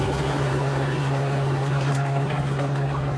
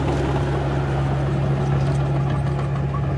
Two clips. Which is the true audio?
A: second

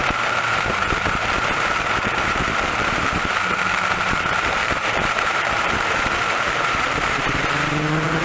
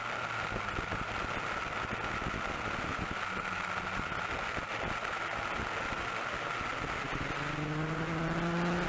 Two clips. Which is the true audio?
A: second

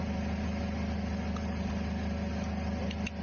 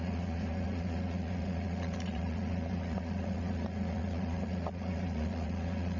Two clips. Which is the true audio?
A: first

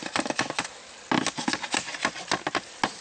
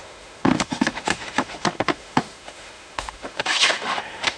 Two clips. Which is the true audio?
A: first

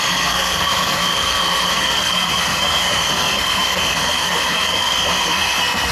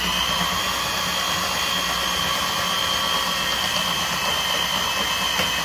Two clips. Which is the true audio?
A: second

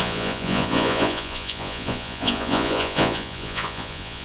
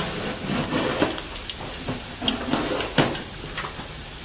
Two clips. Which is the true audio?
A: second